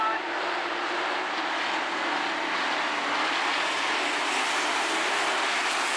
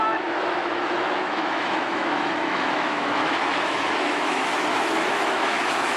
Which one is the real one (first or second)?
first